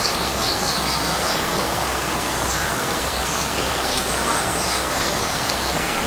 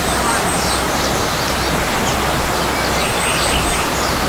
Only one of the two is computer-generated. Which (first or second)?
first